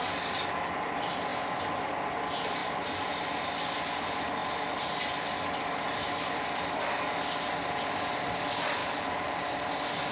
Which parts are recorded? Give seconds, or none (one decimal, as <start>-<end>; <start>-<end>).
0.0-1.3; 1.9-2.6; 3.4-8.8; 9.5-10.1